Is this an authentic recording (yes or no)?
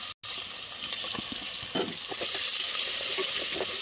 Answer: yes